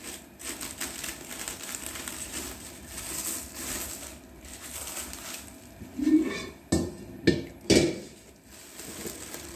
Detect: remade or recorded recorded